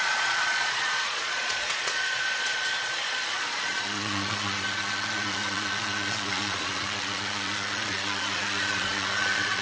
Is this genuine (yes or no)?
no